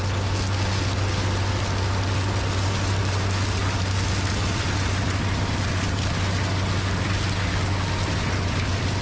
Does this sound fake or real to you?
real